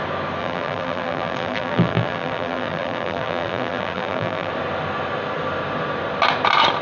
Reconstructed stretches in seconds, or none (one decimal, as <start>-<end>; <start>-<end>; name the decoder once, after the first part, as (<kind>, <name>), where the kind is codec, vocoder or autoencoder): 0.4-4.5 (vocoder, BigVGAN v2)